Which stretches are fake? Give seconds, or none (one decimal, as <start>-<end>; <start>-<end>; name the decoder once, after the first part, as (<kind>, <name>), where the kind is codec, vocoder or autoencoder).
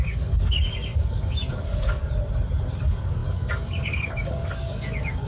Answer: 0.0-2.0 (codec, DAC); 2.8-5.3